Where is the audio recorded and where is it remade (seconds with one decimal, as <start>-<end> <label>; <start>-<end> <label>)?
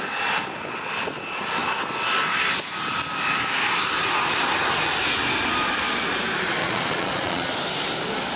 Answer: 0.0-6.6 recorded; 6.6-7.5 remade; 7.5-8.4 recorded